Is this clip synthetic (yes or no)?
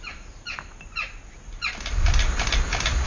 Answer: no